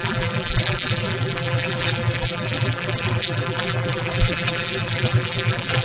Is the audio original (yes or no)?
no